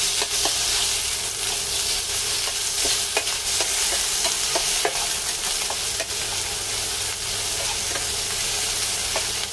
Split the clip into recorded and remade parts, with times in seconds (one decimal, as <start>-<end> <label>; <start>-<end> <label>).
0.0-9.5 recorded